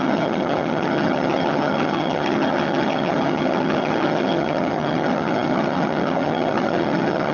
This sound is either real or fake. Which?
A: fake